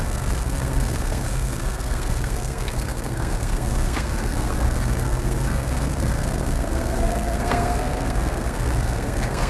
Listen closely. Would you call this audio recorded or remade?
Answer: remade